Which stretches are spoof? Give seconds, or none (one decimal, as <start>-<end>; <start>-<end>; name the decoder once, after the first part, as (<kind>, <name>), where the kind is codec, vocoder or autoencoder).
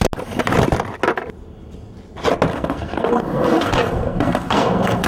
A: 2.5-5.1 (codec, SNAC)